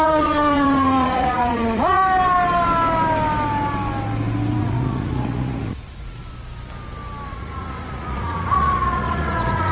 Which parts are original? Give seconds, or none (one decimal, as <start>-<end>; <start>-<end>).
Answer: 2.0-4.6; 6.2-7.3